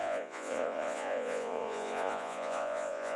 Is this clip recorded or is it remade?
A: remade